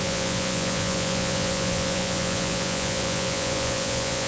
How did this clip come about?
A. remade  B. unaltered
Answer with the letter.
A